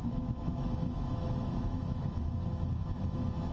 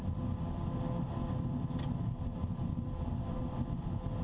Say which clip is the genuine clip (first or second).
second